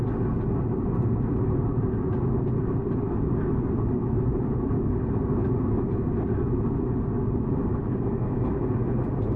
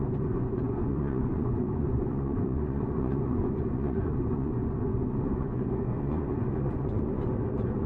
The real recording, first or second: first